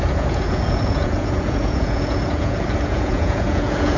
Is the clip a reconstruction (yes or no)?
yes